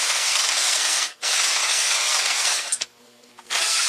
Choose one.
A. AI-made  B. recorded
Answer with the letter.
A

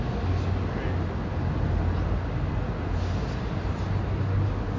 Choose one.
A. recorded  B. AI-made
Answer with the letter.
A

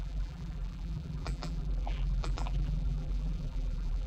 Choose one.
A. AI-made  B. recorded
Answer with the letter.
A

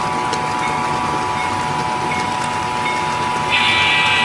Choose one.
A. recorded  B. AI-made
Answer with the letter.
A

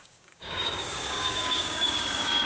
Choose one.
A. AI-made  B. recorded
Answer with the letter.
A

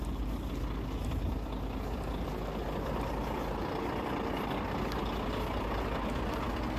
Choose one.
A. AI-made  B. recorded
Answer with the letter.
B